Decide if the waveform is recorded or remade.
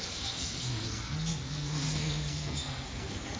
remade